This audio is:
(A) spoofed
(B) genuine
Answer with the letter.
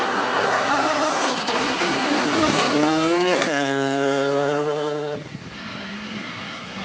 A